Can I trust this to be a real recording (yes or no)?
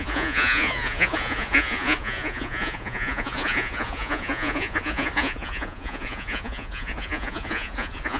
no